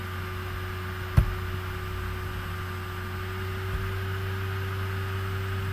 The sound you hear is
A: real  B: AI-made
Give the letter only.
A